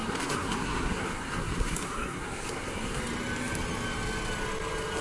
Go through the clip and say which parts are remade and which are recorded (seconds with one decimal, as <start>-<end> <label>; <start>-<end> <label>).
0.0-3.0 remade; 3.0-5.0 recorded